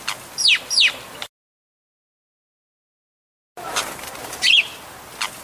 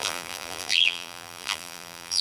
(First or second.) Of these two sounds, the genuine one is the first